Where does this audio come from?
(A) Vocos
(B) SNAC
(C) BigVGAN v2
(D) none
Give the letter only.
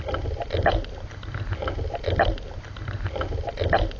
D